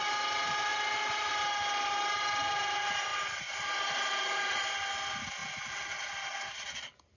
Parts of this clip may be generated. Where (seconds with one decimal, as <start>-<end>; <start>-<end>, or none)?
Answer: 3.1-4.9; 5.4-5.9